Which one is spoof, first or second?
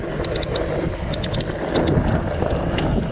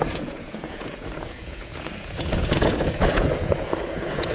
second